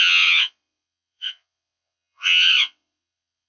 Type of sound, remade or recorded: remade